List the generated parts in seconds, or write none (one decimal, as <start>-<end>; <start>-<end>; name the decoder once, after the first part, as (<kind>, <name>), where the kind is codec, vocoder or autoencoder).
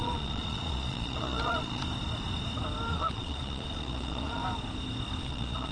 0.0-1.8 (vocoder, Vocos); 2.9-4.4; 5.2-5.7